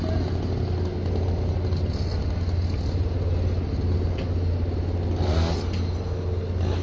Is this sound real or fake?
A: real